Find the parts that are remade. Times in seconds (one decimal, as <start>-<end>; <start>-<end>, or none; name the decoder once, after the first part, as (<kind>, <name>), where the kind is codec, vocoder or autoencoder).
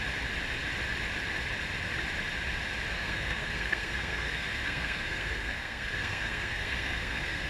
2.9-7.5 (codec, SNAC)